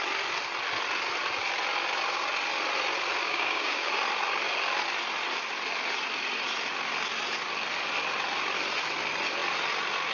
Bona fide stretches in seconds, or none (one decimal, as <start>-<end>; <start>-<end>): 0.0-3.2; 3.9-10.1